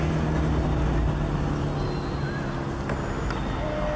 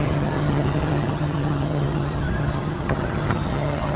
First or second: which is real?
first